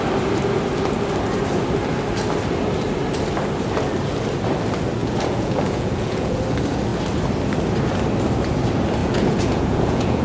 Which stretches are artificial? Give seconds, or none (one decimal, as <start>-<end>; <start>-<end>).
5.0-6.4; 9.0-10.2